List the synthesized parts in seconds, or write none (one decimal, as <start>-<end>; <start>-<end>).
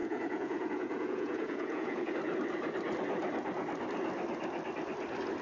0.0-2.1